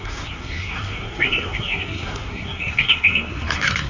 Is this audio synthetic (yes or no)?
yes